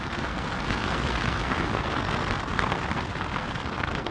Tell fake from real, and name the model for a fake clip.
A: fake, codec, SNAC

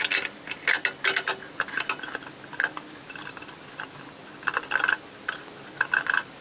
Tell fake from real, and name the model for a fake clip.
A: real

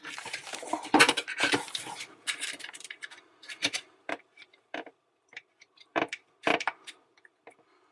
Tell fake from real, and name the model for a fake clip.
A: fake, vocoder, BigVGAN v2